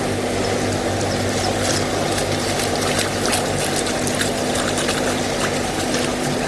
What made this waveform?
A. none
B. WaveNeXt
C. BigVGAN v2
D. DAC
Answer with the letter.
A